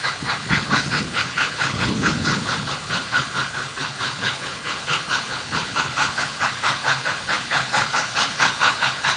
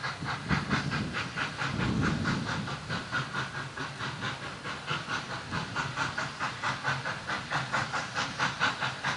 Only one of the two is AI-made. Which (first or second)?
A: first